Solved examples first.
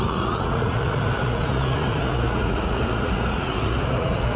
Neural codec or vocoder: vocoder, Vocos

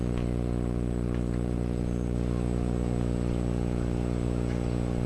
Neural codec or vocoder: vocoder, Vocos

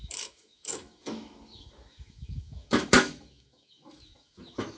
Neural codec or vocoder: autoencoder, DAC-VAE